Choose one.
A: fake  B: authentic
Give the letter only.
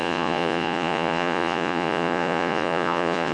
A